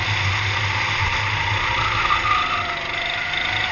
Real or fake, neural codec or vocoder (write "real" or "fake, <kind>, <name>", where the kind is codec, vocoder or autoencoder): real